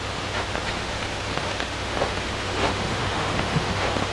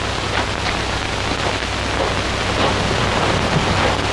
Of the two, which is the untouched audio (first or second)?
second